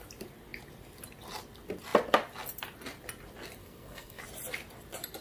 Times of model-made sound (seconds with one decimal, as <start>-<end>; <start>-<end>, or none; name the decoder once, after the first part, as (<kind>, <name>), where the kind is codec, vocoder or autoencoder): 3.6-4.2 (codec, SNAC)